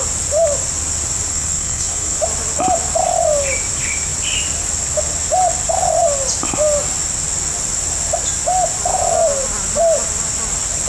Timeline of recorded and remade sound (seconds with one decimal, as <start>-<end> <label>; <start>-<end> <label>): 0.0-1.3 recorded; 1.3-2.2 remade; 2.2-10.9 recorded